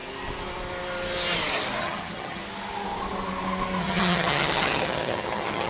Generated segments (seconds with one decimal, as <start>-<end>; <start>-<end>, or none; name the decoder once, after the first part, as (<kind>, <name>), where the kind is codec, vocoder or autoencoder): 1.8-2.4 (vocoder, HiFi-GAN); 3.8-5.7